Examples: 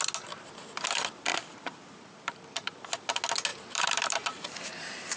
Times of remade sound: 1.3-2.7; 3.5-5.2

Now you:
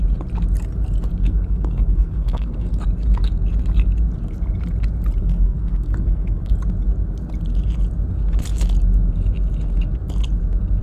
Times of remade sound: 1.2-2.8; 5.2-6.5

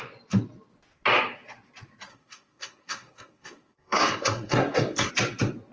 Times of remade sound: 2.1-5.1

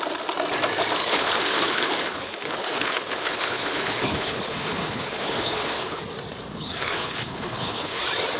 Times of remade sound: 1.0-6.0; 6.5-8.0

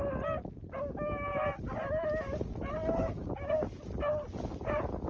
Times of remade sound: 1.3-1.9